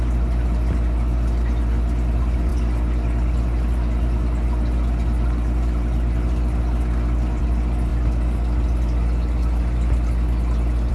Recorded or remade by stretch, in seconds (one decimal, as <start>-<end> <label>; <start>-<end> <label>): 0.0-10.9 recorded